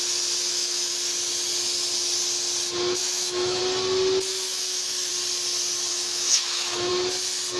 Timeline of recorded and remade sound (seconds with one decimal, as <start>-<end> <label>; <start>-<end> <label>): 0.0-0.4 recorded; 0.4-0.9 remade; 0.9-3.0 recorded; 3.0-3.6 remade; 3.6-4.3 recorded; 4.3-5.1 remade; 5.1-5.9 recorded; 5.9-6.9 remade; 6.9-7.6 recorded